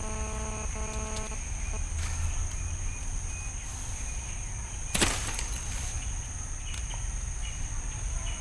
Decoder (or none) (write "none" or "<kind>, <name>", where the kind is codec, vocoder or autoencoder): none